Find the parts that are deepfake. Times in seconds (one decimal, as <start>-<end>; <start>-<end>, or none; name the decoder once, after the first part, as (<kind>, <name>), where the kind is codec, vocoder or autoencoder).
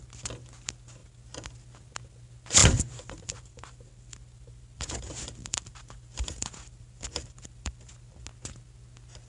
2.6-7.9 (vocoder, BigVGAN v2)